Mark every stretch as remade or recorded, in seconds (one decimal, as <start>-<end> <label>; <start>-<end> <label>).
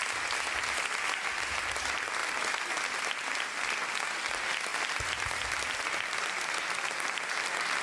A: 0.0-7.8 recorded